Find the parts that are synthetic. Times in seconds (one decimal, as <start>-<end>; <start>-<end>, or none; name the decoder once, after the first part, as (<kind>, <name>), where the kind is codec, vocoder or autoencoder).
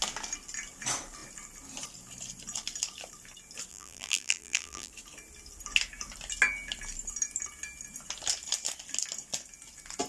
3.7-4.9 (vocoder, BigVGAN v2)